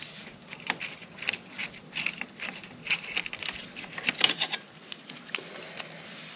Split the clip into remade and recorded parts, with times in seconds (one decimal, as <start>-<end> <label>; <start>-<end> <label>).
0.0-6.4 recorded

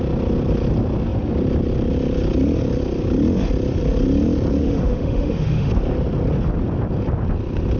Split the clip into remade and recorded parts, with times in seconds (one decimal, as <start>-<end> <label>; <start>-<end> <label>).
0.0-4.6 recorded; 4.6-5.7 remade; 5.7-7.8 recorded

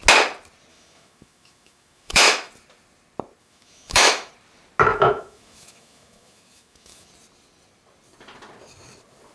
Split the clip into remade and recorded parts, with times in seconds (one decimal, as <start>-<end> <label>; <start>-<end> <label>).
0.0-0.7 recorded; 0.7-2.5 remade; 2.5-3.4 recorded; 3.4-4.3 remade; 4.3-4.9 recorded; 4.9-7.1 remade; 7.1-9.3 recorded

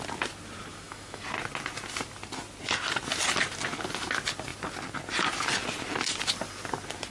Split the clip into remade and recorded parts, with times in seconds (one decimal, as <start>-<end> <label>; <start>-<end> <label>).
0.0-0.7 recorded; 0.7-1.2 remade; 1.2-7.1 recorded

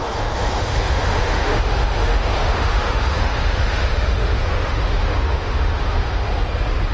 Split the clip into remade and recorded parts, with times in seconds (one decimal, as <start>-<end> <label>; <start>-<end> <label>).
0.0-6.3 remade; 6.3-6.9 recorded

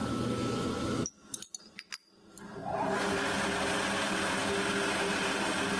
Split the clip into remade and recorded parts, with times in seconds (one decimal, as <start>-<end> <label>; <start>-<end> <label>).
0.0-1.5 remade; 1.5-5.8 recorded